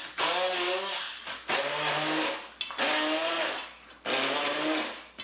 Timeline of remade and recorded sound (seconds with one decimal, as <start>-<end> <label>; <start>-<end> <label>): 0.0-5.2 recorded